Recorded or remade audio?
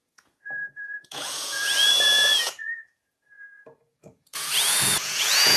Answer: remade